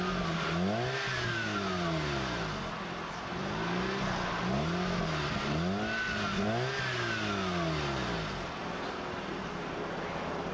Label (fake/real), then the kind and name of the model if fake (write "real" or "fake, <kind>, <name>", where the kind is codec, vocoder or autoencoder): real